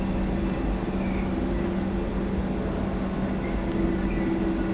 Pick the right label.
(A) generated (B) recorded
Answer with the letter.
B